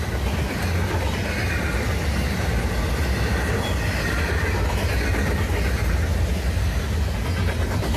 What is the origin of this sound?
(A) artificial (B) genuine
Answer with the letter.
B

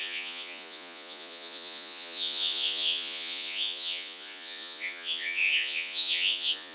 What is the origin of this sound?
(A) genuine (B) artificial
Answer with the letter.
B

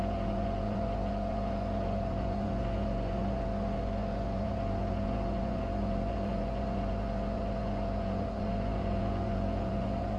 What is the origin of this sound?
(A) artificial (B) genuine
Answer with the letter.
A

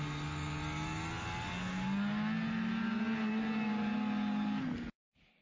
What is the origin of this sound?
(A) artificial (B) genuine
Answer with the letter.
B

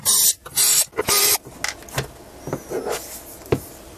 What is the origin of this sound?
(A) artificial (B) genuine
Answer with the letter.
B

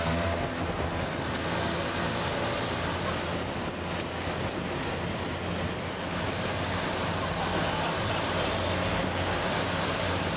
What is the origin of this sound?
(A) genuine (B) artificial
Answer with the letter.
A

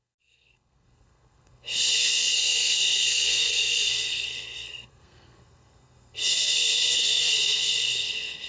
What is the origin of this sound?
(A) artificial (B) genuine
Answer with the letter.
A